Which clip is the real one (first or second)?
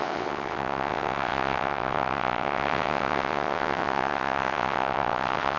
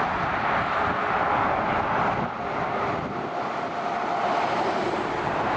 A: second